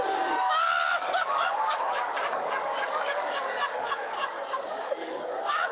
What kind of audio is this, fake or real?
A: fake